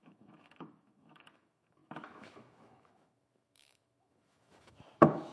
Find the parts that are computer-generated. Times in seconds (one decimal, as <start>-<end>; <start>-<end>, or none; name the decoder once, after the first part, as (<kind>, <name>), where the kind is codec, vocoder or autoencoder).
0.0-5.3 (autoencoder, DAC-VAE)